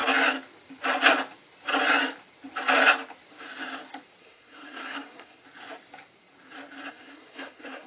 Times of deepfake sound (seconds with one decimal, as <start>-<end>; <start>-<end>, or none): 4.2-5.4; 6.9-7.9